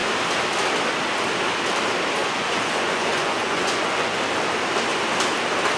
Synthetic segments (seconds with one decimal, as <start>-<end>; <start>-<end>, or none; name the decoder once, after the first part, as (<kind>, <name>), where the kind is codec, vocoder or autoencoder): 2.2-4.2 (vocoder, Vocos)